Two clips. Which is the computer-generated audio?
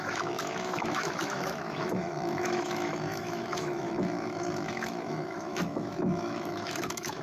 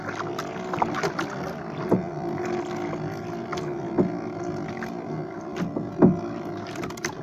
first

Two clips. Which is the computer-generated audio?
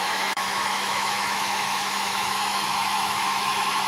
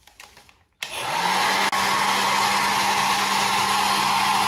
first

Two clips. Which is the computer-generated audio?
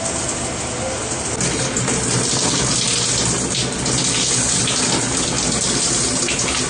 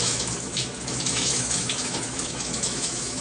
second